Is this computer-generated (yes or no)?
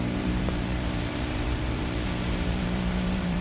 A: yes